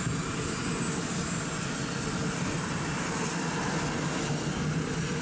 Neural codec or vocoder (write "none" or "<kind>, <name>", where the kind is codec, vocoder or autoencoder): none